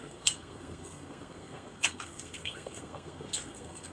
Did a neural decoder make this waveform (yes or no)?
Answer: yes